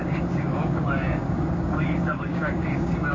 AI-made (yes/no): yes